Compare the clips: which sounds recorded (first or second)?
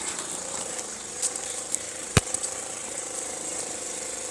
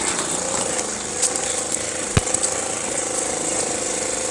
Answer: second